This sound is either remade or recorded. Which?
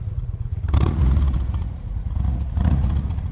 remade